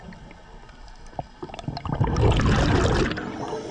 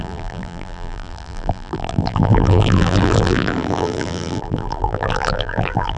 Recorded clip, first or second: first